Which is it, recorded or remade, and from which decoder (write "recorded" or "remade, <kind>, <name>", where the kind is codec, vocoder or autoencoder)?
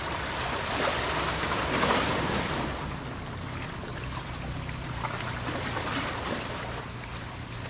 recorded